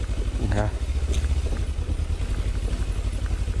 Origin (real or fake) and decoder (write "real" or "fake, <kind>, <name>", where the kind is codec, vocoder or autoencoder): real